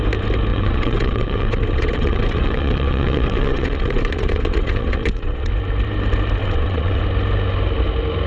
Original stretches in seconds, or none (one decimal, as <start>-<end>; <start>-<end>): 0.0-0.5; 5.5-6.4; 7.0-8.3